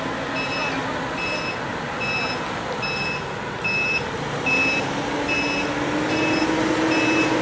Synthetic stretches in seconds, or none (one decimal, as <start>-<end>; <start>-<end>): none